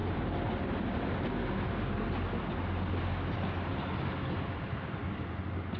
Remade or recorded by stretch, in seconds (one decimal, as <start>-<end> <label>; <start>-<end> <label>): 0.0-5.8 recorded